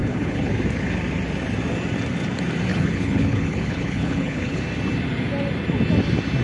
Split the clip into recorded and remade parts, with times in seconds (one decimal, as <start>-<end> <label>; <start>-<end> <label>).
0.0-0.5 remade; 0.5-2.7 recorded; 2.7-4.6 remade; 4.6-6.4 recorded